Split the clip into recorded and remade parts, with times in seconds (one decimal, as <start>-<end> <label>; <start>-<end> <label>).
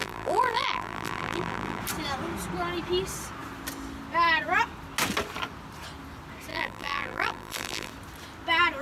0.0-1.8 remade; 1.8-6.5 recorded; 6.5-7.9 remade; 7.9-8.8 recorded